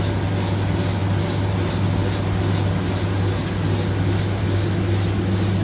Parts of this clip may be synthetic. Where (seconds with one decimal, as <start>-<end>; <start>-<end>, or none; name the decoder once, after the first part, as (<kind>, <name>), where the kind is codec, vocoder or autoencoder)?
none